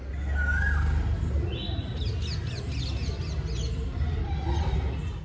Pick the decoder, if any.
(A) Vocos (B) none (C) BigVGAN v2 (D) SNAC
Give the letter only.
B